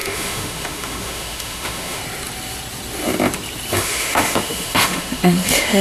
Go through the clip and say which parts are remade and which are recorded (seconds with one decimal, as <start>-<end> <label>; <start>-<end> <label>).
0.0-2.0 remade; 2.0-3.7 recorded; 3.7-5.8 remade